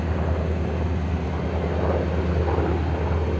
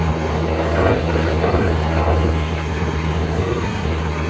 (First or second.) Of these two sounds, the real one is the first